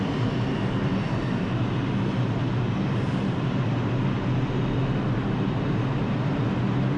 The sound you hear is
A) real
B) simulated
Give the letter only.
A